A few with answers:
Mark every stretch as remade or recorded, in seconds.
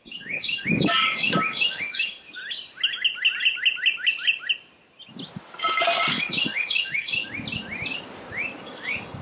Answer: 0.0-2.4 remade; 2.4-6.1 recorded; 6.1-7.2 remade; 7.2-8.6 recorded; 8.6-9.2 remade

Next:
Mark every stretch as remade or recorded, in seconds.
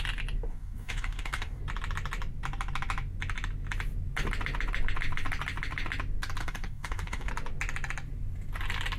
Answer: 0.0-0.5 recorded; 0.5-1.6 remade; 1.6-6.4 recorded; 6.4-7.3 remade; 7.3-9.0 recorded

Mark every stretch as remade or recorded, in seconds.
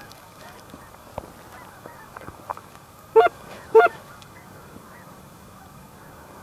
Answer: 0.0-1.1 remade; 1.1-1.7 recorded; 1.7-6.4 remade